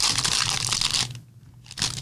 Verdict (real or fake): real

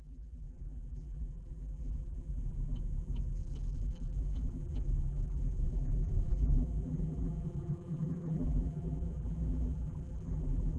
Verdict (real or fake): fake